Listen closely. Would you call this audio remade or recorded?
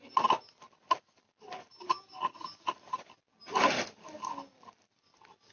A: recorded